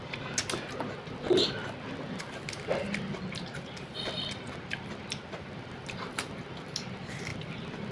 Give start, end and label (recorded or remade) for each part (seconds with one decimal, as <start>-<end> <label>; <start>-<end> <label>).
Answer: 0.0-7.9 recorded